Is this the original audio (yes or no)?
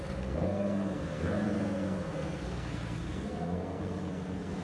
no